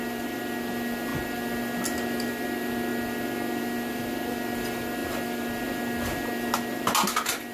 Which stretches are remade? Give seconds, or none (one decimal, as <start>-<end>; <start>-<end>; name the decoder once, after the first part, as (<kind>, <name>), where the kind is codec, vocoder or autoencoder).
none